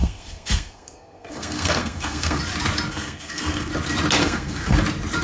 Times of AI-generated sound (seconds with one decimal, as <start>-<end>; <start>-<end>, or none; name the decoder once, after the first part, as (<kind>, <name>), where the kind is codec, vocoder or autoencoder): 0.0-2.4 (codec, SNAC); 2.9-3.7; 4.2-4.8